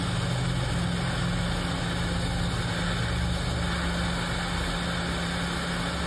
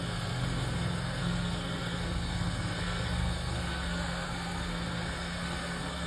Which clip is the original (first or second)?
first